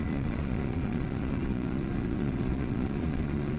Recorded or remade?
remade